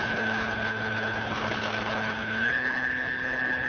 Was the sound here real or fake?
fake